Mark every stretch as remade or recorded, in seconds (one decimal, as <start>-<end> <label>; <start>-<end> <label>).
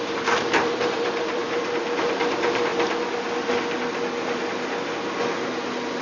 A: 0.0-2.7 remade; 2.7-6.0 recorded